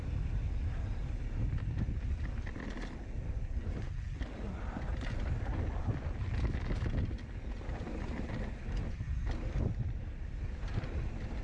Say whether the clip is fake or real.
real